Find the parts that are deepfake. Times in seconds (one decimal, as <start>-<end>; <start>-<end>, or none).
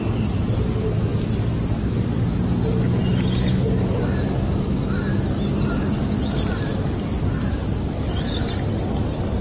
none